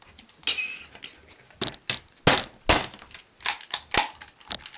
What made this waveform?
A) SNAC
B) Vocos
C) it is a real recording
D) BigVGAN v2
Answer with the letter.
C